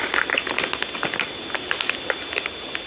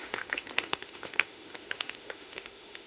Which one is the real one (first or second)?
first